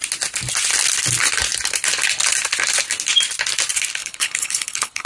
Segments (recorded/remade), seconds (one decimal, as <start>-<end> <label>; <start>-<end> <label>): 0.0-4.0 recorded; 4.0-5.1 remade